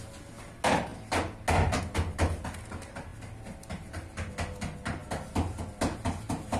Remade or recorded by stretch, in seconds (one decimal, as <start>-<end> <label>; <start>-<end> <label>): 0.0-6.6 recorded